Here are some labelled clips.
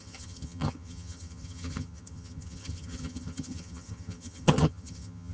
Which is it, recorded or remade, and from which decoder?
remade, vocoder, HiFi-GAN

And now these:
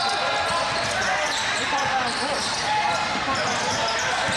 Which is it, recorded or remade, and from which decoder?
recorded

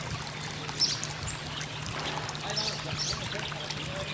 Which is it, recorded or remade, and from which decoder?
recorded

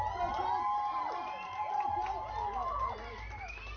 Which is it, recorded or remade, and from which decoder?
recorded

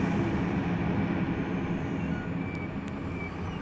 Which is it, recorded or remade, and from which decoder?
recorded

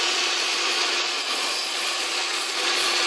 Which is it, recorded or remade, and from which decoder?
remade, vocoder, Vocos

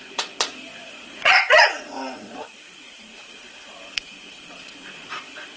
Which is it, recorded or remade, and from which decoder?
remade, vocoder, Vocos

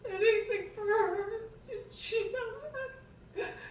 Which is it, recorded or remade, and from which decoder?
recorded